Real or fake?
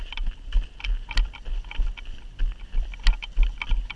real